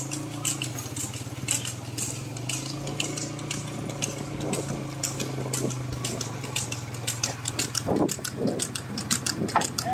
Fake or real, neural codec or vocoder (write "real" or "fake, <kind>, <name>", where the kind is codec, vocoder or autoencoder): real